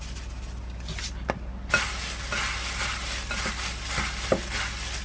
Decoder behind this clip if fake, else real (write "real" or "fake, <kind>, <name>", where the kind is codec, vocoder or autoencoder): real